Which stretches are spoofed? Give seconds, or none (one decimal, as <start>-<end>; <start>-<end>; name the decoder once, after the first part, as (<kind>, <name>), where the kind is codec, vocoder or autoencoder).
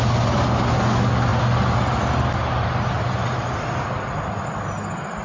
none